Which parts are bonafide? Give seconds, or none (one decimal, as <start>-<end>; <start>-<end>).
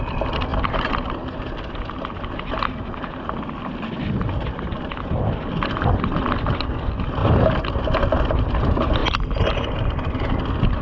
0.0-0.5; 1.1-9.0; 10.2-10.8